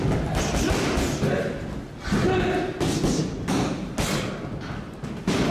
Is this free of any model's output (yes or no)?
yes